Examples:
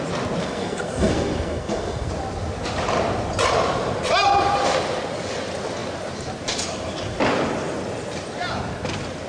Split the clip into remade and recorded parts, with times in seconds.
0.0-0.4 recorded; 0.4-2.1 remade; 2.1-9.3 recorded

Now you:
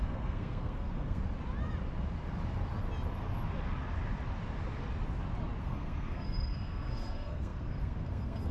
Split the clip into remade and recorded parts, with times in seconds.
0.0-1.2 remade; 1.2-5.6 recorded; 5.6-8.5 remade